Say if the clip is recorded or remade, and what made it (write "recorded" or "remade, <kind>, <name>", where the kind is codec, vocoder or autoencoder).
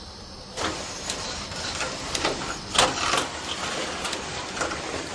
recorded